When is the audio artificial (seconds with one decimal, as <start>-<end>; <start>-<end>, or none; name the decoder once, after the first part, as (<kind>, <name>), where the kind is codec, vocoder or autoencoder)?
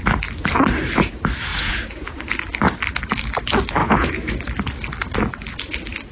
1.5-2.2 (vocoder, Vocos); 3.8-4.3